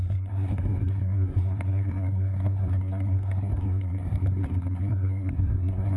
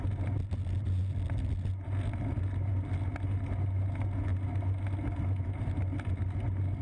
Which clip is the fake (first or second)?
first